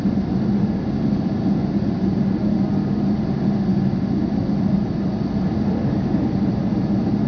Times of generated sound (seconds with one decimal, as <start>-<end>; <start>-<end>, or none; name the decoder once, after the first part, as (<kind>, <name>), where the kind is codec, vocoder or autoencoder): none